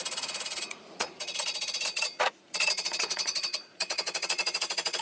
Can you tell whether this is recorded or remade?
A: remade